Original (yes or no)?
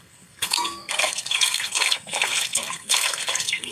no